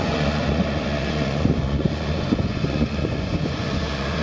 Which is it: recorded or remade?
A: remade